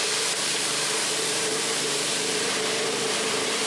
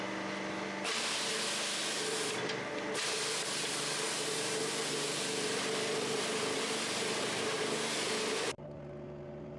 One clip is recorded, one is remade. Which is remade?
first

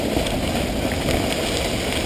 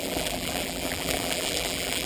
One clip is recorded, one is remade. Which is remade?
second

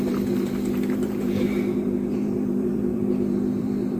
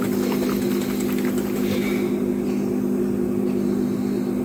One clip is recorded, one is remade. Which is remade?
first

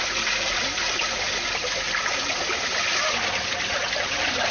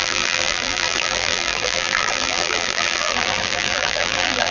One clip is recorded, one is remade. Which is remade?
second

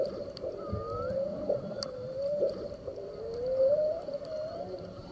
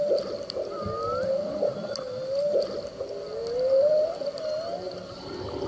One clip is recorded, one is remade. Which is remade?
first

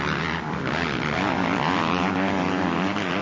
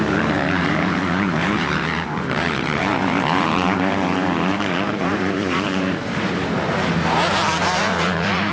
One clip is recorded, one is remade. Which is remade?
second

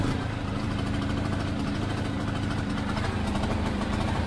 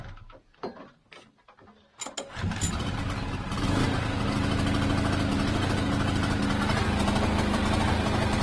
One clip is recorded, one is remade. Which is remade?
first